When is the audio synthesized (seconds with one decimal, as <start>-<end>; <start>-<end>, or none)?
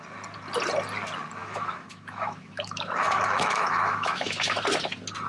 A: 1.4-4.6